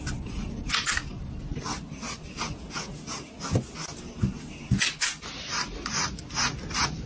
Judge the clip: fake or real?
real